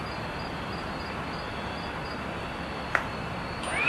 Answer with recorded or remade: recorded